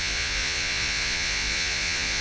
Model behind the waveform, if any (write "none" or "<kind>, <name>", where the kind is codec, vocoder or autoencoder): vocoder, Vocos